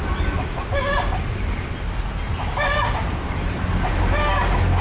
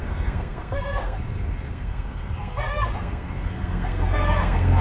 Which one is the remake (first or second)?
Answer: second